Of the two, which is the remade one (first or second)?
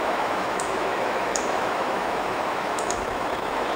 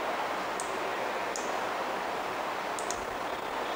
first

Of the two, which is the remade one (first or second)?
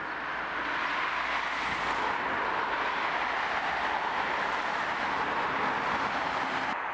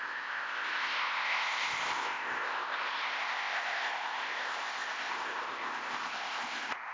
second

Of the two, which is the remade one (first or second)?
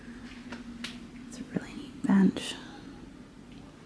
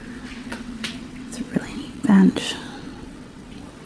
second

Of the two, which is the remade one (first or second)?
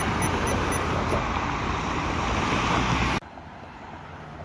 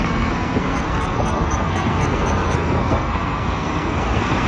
second